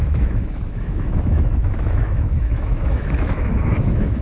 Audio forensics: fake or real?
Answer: fake